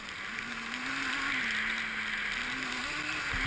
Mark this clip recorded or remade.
recorded